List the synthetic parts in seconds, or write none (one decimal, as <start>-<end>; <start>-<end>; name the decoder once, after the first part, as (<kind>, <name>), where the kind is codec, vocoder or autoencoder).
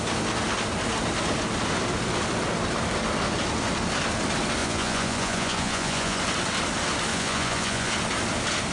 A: 4.6-6.2 (vocoder, Vocos); 7.1-7.9